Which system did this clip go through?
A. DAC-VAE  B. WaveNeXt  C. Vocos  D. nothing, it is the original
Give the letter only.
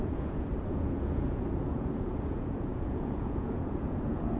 C